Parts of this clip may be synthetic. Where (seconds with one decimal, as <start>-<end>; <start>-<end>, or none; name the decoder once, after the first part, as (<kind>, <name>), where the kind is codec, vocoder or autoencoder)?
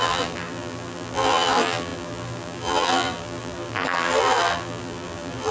0.0-5.5 (vocoder, BigVGAN v2)